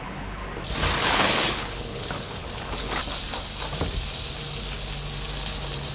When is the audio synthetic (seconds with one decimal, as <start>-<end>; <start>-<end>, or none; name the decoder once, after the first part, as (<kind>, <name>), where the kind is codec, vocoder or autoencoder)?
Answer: 0.0-0.4 (codec, HILCodec); 1.0-3.0